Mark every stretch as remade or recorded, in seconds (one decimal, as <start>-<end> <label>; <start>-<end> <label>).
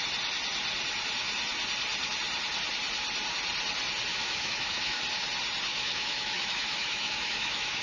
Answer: 0.0-4.1 recorded; 4.1-5.0 remade; 5.0-5.7 recorded; 5.7-7.8 remade